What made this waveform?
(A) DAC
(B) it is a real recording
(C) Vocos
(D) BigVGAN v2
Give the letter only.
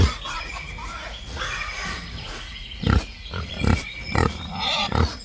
C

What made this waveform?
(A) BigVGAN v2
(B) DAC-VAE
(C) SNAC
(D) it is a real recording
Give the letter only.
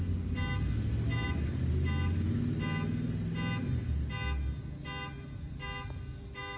D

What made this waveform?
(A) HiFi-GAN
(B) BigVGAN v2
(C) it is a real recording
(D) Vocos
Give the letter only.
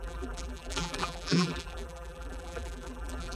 B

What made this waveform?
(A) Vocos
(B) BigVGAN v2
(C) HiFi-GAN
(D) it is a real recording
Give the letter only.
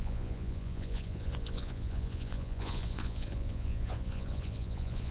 A